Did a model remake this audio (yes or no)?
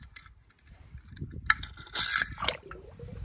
no